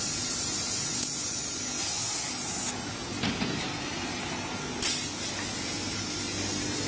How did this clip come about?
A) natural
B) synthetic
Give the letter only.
A